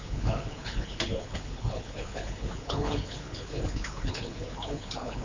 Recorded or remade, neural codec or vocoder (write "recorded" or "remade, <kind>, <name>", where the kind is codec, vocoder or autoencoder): remade, codec, HILCodec